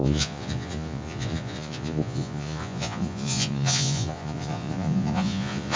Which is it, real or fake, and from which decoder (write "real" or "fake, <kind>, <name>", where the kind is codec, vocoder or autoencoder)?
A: fake, vocoder, Vocos